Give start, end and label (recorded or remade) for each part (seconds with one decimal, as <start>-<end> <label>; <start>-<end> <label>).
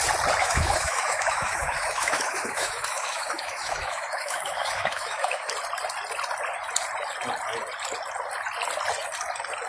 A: 0.0-0.4 recorded; 0.4-5.5 remade; 5.5-9.7 recorded